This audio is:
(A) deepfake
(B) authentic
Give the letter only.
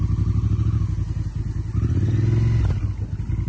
B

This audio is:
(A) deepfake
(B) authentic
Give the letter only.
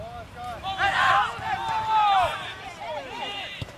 B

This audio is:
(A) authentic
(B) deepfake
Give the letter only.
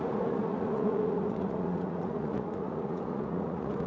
B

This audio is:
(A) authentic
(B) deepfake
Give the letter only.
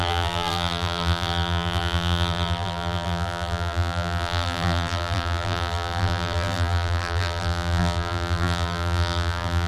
B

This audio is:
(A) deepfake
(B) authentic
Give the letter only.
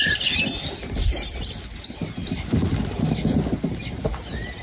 B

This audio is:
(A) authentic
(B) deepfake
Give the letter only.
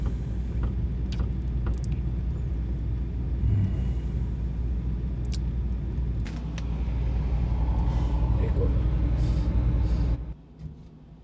A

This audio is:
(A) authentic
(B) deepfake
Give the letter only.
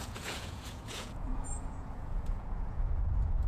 B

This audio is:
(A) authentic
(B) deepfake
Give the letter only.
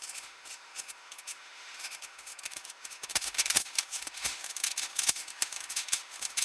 B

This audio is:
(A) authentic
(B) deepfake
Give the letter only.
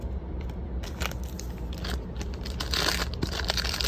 A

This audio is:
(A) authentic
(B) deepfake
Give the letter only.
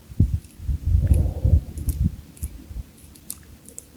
B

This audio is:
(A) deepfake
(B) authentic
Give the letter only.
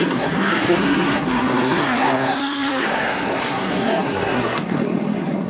A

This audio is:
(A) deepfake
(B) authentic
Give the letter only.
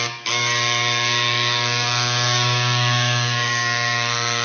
A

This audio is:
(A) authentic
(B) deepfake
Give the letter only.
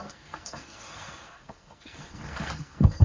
B